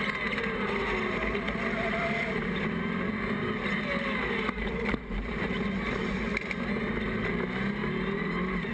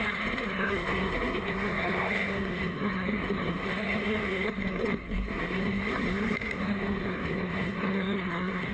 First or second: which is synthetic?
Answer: second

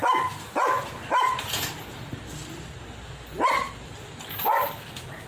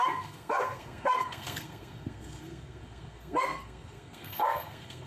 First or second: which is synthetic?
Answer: second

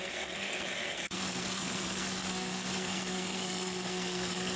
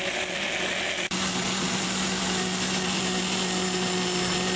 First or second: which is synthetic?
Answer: first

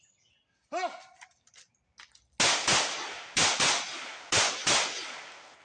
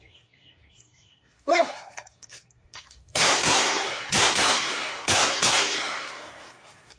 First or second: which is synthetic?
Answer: second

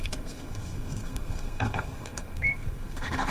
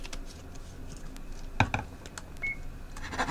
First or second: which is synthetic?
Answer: first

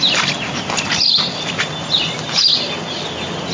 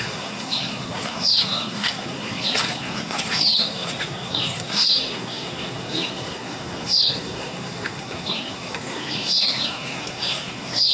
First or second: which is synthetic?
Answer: second